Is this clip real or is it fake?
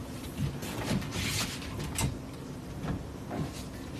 real